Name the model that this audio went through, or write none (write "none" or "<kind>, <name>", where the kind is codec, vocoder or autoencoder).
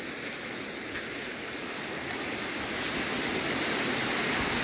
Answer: none